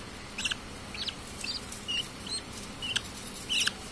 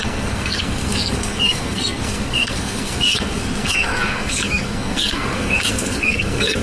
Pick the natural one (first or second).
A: first